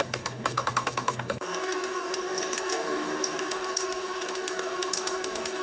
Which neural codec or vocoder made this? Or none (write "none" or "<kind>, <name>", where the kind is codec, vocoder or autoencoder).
codec, DAC